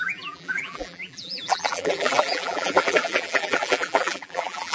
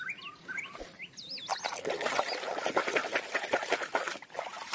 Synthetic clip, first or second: first